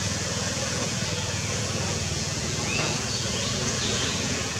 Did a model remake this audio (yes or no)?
yes